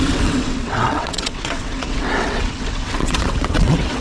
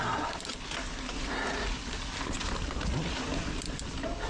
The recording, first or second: second